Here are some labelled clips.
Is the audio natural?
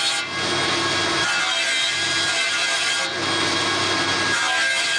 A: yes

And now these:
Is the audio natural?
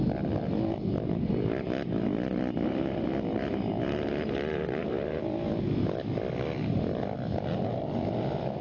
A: yes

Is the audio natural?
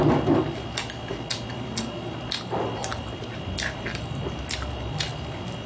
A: yes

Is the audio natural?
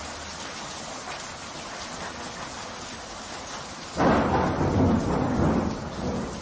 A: yes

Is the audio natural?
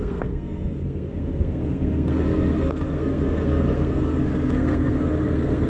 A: no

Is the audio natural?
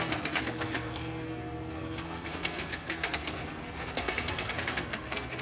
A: no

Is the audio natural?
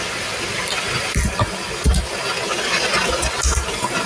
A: yes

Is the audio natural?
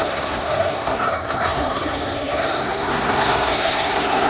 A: no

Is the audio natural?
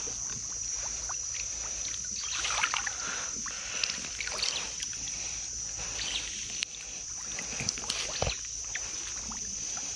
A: yes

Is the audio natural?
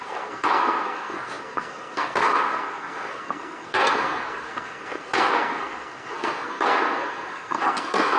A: no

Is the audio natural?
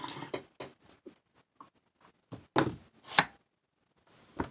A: yes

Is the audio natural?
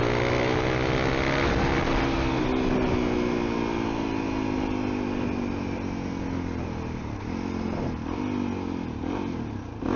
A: yes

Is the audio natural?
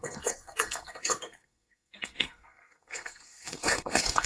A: no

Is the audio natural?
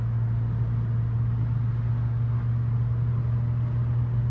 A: yes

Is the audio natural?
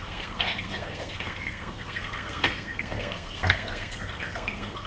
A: no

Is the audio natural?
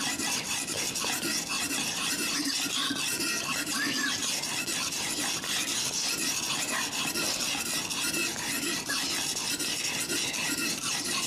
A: yes